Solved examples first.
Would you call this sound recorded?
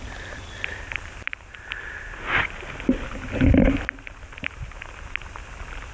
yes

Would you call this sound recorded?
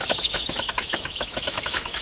no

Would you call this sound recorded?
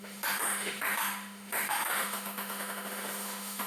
no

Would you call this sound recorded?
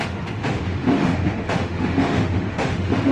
no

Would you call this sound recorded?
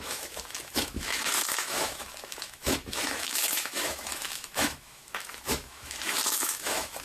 no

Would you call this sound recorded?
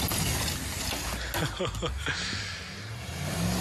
yes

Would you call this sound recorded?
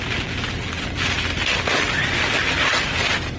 yes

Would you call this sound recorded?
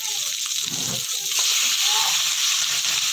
yes